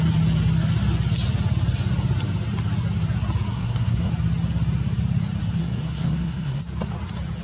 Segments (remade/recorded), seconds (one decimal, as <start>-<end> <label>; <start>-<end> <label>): 0.0-3.5 recorded; 3.5-4.1 remade; 4.1-5.6 recorded; 5.6-6.6 remade; 6.6-7.4 recorded